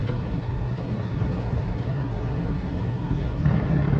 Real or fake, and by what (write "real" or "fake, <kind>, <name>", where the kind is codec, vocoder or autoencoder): fake, codec, SNAC